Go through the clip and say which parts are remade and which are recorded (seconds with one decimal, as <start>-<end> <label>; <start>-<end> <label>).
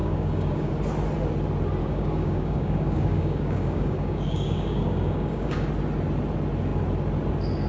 0.0-0.7 remade; 0.7-1.8 recorded; 1.8-5.7 remade; 5.7-7.7 recorded